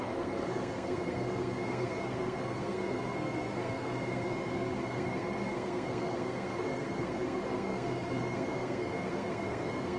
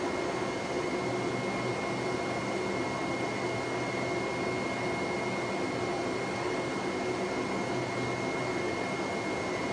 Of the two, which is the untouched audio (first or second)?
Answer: second